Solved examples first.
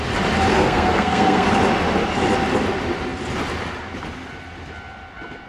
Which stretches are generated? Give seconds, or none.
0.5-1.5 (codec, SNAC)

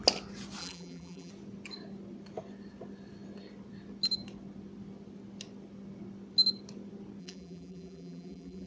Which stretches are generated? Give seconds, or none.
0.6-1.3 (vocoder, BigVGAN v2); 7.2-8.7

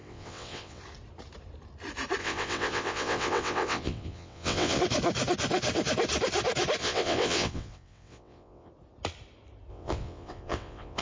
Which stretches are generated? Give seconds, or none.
0.0-0.8 (vocoder, WaveNeXt); 2.2-4.8; 6.8-8.7; 9.7-11.0

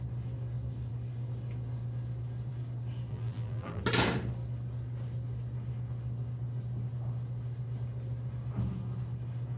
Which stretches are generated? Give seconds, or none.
3.1-3.8 (vocoder, BigVGAN v2)

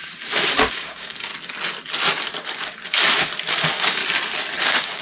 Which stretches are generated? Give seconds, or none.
0.7-1.3 (codec, DAC); 3.5-4.0; 4.6-5.0